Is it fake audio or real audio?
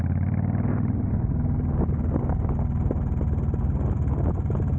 real